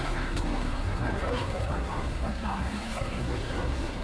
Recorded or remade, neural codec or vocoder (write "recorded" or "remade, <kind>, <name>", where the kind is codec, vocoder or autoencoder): remade, codec, SNAC